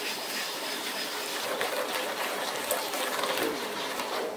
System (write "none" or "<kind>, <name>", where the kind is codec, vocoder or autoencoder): none